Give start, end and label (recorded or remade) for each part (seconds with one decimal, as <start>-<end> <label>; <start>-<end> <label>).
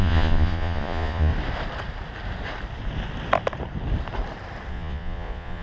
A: 0.0-1.3 remade; 1.3-4.7 recorded; 4.7-5.6 remade